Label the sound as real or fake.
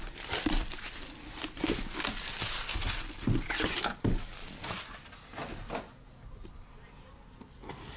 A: real